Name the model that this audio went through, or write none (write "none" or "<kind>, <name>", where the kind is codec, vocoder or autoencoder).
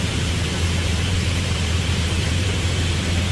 vocoder, BigVGAN v2